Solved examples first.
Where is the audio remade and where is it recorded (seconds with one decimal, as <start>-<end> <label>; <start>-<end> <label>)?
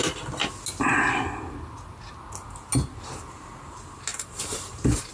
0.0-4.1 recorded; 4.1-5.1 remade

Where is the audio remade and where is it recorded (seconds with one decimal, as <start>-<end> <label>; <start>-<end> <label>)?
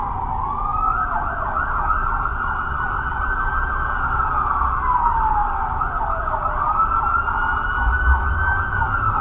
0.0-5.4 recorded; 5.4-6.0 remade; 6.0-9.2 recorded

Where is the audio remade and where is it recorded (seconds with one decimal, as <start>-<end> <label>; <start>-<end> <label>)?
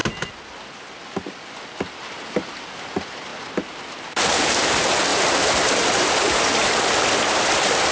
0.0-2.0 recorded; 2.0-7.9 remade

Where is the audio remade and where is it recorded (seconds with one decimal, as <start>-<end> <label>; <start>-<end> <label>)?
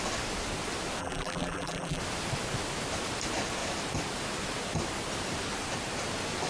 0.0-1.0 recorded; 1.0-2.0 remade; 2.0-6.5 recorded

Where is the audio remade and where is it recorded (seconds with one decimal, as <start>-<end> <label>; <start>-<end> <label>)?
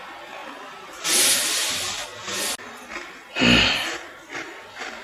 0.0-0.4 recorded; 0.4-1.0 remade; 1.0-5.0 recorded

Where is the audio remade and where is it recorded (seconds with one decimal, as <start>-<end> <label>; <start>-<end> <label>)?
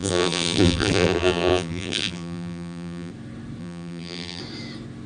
0.0-3.1 remade; 3.1-3.6 recorded; 3.6-4.4 remade; 4.4-5.1 recorded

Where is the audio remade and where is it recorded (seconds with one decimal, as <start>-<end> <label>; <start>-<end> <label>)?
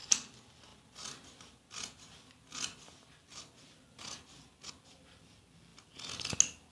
0.0-0.7 remade; 0.7-4.7 recorded; 4.7-5.7 remade; 5.7-6.7 recorded